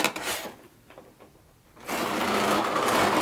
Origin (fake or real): real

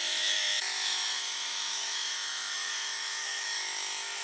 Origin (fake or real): fake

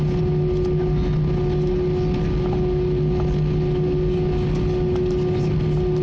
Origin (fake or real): real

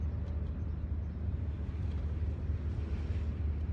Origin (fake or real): real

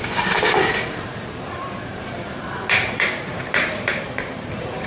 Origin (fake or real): fake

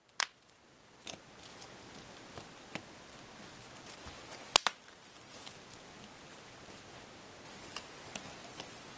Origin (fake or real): real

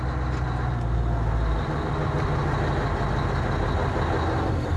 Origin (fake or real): real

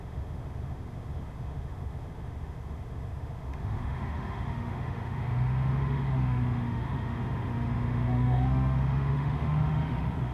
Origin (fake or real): fake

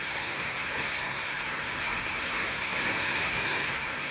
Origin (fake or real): fake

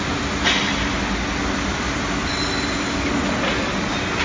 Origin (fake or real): real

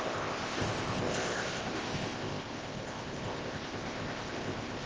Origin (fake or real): fake